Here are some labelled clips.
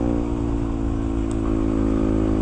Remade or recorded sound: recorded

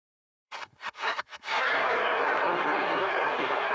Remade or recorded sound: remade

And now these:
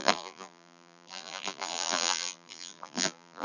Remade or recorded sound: remade